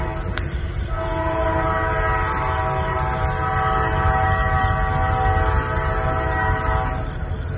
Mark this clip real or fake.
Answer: real